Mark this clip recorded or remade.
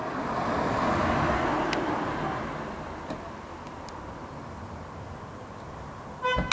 recorded